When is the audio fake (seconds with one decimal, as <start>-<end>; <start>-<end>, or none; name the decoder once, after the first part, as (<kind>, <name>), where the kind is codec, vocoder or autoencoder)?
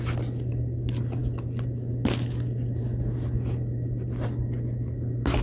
none